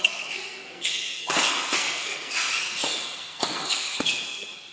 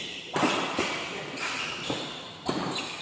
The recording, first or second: second